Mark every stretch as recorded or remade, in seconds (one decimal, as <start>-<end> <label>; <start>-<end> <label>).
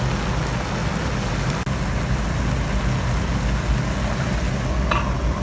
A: 0.0-5.4 recorded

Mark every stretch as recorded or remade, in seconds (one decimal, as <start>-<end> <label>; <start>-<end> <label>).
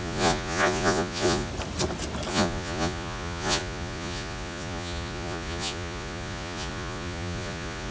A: 0.0-1.5 remade; 1.5-2.3 recorded; 2.3-7.9 remade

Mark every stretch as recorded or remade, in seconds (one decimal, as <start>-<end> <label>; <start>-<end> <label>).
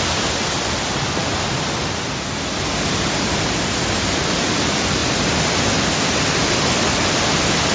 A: 0.0-7.7 recorded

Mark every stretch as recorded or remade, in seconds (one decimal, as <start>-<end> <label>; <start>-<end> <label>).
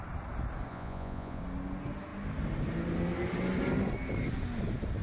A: 0.0-0.7 recorded; 0.7-1.4 remade; 1.4-5.0 recorded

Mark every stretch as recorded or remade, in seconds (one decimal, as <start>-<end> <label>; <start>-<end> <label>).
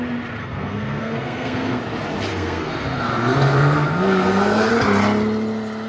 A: 0.0-0.4 recorded; 0.4-1.8 remade; 1.8-2.3 recorded; 2.3-4.7 remade; 4.7-5.9 recorded